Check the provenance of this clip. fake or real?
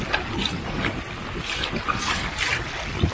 real